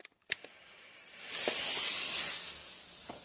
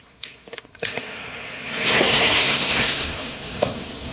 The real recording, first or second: first